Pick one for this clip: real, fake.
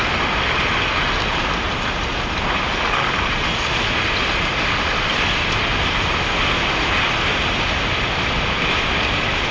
real